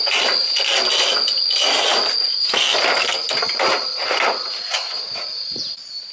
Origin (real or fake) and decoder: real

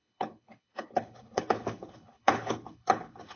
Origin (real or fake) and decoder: fake, codec, HILCodec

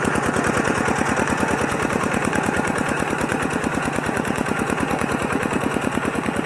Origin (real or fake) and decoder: fake, vocoder, Vocos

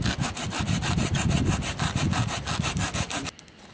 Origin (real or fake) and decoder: real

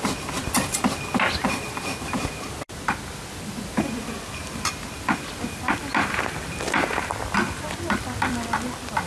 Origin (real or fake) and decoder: real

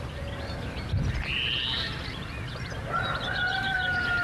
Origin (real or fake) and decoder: real